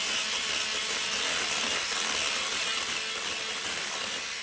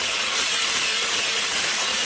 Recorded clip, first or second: first